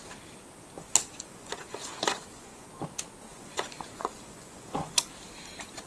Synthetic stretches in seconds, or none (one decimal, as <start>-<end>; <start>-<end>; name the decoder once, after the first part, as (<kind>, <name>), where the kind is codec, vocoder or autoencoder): 1.0-2.7 (vocoder, Vocos); 3.3-5.1